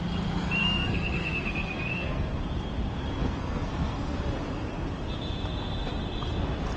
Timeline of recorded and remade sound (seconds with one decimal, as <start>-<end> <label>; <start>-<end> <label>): 0.0-0.6 recorded; 0.6-2.4 remade; 2.4-3.2 recorded; 3.2-4.2 remade; 4.2-6.8 recorded